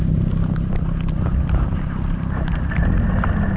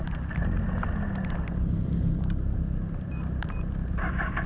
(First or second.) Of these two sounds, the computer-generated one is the first